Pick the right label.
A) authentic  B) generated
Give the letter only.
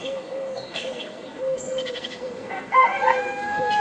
B